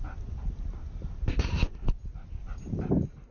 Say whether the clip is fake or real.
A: real